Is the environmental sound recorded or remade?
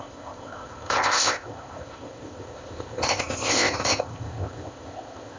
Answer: remade